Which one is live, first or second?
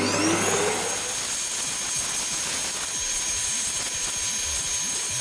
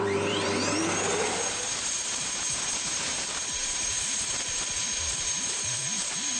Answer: first